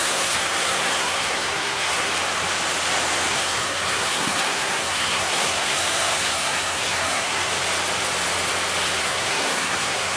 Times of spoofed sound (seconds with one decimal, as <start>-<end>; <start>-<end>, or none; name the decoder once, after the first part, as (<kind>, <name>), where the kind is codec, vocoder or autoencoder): 0.0-2.1 (codec, SNAC); 3.3-7.5; 9.0-10.2